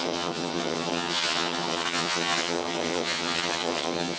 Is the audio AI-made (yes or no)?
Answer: yes